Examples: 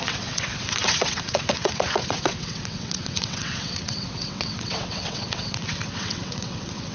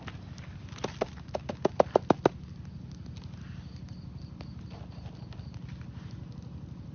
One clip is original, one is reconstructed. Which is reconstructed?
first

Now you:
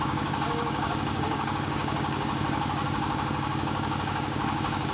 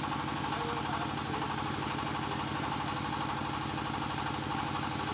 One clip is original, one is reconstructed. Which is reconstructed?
first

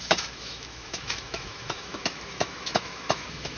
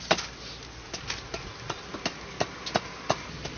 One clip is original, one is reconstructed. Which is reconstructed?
first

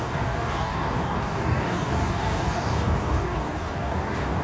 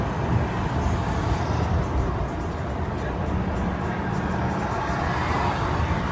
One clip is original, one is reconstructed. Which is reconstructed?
first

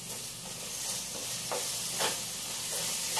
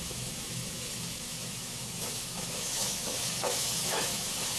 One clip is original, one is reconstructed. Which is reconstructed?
second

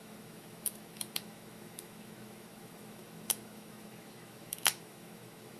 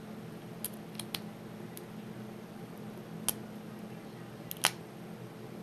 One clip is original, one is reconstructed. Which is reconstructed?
first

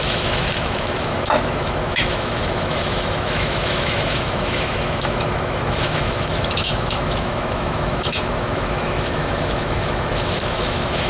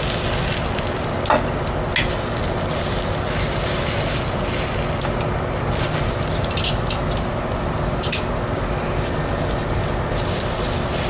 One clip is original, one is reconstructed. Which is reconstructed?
first